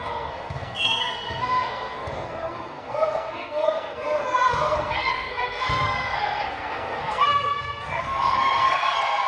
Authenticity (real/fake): fake